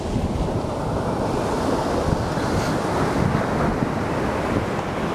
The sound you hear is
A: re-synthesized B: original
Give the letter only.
B